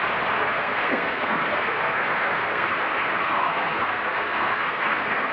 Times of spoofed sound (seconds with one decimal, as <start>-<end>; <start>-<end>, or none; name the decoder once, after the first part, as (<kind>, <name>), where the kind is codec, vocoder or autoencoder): 0.4-2.8 (codec, SNAC); 3.2-5.3